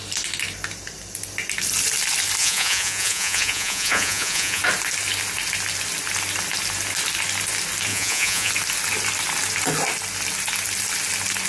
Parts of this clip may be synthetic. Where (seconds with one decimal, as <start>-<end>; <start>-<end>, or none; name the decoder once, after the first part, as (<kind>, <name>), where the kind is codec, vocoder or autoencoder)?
2.4-4.6 (vocoder, Vocos); 7.9-8.5